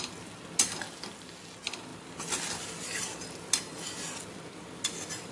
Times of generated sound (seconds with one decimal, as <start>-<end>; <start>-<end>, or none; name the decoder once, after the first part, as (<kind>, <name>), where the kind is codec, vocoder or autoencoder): none